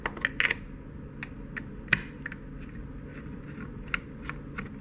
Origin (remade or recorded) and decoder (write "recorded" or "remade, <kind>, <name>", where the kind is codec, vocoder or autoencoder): recorded